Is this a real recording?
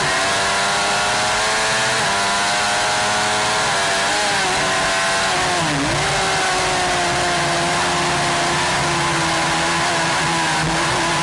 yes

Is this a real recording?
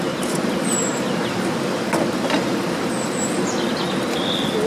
no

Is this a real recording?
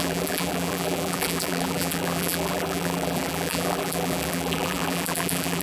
no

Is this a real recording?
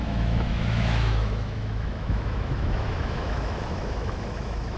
no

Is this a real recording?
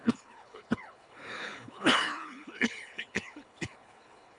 no